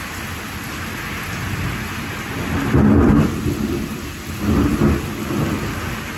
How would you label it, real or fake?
real